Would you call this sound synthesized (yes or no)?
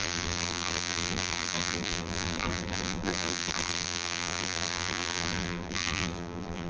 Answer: yes